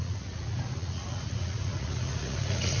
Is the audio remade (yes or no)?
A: yes